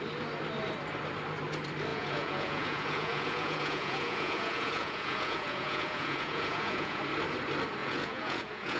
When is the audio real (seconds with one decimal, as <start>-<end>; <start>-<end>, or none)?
0.0-1.9; 7.0-7.8